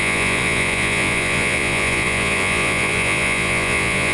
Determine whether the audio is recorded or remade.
remade